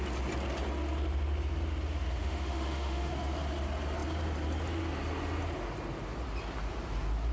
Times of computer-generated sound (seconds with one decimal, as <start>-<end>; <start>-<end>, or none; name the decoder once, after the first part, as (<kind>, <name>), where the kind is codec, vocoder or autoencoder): 2.2-3.1 (autoencoder, DAC-VAE)